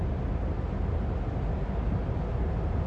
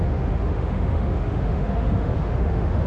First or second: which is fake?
second